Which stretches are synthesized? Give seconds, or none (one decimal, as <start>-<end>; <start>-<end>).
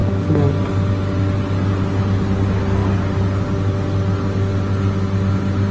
none